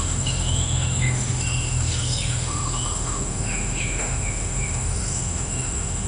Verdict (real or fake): fake